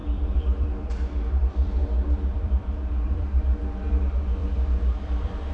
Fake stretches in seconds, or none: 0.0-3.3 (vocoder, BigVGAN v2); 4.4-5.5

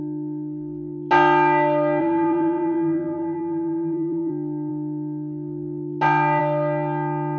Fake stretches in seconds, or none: 2.0-4.3 (vocoder, BigVGAN v2)

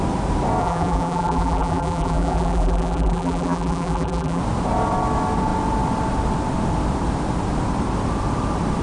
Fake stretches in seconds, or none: 0.6-4.4 (vocoder, BigVGAN v2)